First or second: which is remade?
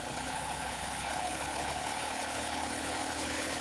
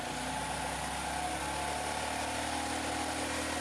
first